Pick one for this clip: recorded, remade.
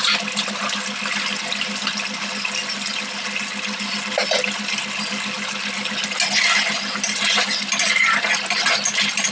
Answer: recorded